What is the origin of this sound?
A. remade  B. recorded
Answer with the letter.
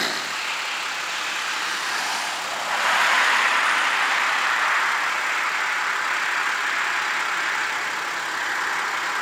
B